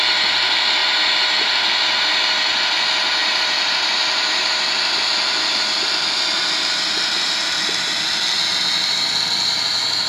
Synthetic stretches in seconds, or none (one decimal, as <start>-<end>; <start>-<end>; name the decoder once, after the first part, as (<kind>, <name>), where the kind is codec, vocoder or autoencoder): 3.2-5.5 (vocoder, BigVGAN v2)